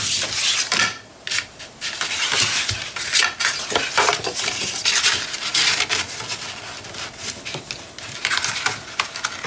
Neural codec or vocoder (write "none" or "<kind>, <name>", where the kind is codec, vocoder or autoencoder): none